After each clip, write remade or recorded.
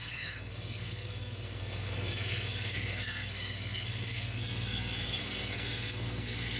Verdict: remade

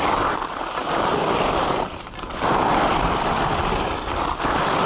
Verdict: recorded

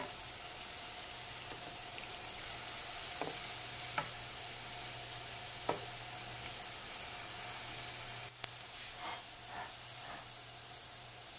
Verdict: recorded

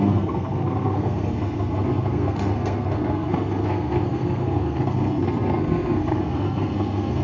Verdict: remade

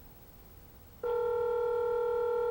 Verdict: recorded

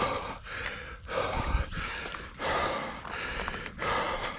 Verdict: recorded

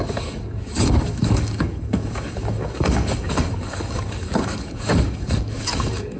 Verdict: remade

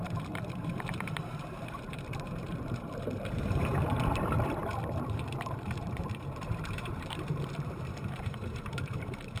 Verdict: remade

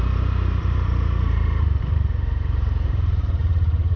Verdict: remade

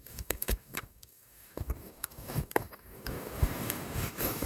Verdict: remade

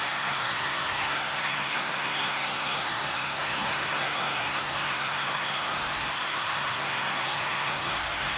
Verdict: remade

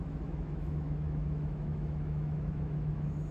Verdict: remade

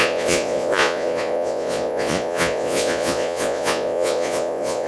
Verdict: remade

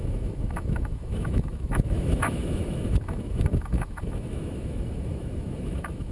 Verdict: remade